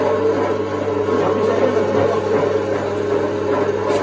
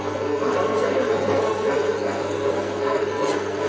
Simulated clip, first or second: second